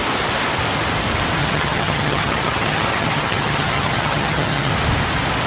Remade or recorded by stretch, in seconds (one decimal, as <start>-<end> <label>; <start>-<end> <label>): 0.0-1.4 recorded; 1.4-4.7 remade; 4.7-5.5 recorded